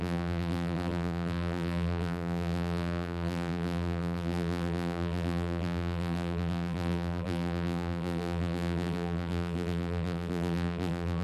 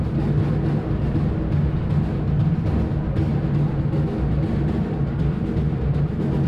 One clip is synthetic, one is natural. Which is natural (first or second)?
second